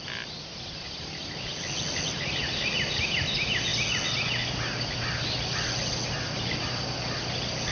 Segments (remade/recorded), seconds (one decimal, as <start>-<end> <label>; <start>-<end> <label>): 0.0-7.7 recorded